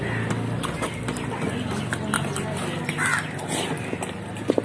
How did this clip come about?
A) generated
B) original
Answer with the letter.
B